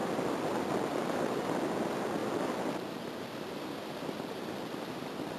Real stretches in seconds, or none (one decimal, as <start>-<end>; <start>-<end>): 0.0-5.4